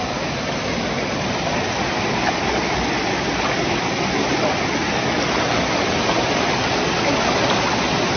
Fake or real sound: real